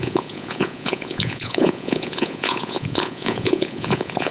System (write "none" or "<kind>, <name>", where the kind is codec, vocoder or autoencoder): vocoder, Vocos